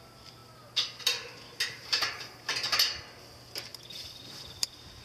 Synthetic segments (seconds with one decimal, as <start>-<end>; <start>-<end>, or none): 1.8-2.5